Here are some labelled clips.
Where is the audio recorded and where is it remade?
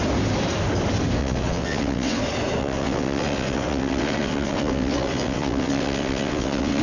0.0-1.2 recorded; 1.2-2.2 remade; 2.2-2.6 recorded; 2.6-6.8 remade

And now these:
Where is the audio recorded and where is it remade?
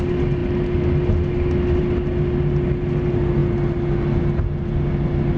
0.0-5.4 recorded